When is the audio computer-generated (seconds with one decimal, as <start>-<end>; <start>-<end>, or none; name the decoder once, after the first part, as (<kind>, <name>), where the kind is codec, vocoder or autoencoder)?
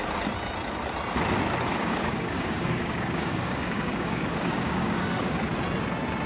1.7-5.5 (codec, DAC)